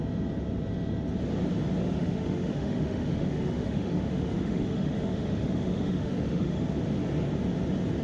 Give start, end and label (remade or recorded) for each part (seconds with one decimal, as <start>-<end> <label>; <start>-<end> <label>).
0.0-1.8 recorded; 1.8-6.6 remade; 6.6-8.0 recorded